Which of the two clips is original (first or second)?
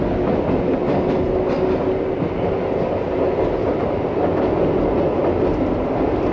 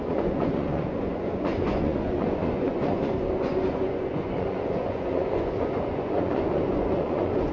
first